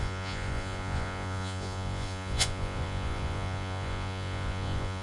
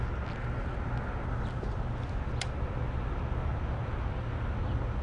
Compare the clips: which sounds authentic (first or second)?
second